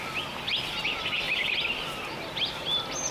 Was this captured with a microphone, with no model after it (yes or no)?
yes